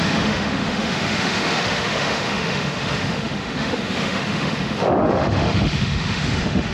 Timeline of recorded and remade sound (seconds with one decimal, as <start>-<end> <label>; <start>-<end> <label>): 0.0-6.7 remade